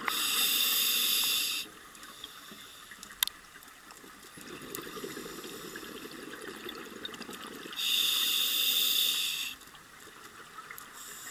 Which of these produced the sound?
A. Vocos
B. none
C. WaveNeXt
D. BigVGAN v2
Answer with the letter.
B